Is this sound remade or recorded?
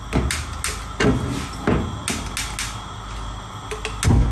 recorded